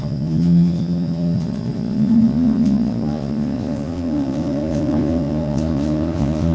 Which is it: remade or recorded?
remade